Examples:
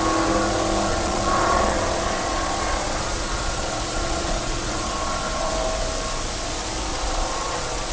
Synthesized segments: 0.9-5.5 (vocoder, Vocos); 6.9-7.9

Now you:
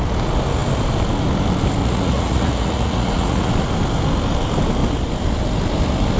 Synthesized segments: 1.8-3.5 (vocoder, Vocos)

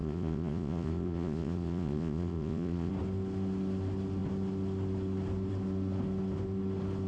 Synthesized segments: 0.0-2.9 (vocoder, Vocos)